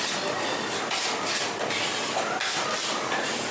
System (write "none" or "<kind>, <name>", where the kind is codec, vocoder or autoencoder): none